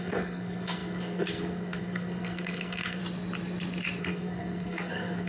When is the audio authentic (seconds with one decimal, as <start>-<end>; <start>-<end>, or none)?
3.0-4.0